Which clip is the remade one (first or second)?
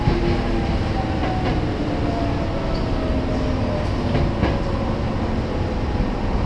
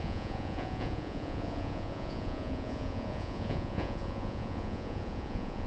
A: second